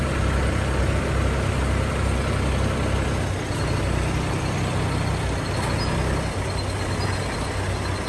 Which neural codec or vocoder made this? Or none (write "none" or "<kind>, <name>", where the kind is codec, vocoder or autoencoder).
none